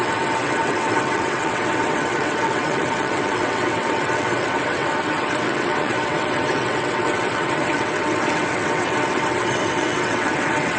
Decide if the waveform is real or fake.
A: fake